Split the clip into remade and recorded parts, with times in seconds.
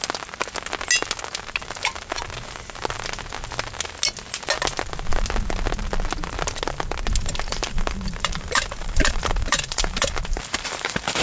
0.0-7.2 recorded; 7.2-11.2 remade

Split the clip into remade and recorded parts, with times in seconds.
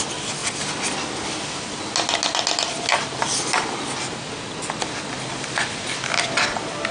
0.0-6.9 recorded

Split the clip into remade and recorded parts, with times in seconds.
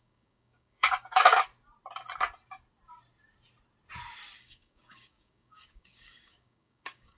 0.0-1.5 remade; 1.5-4.4 recorded; 4.4-7.2 remade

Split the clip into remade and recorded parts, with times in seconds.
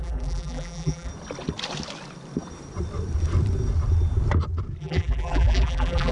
0.0-1.1 remade; 1.1-4.8 recorded; 4.8-6.1 remade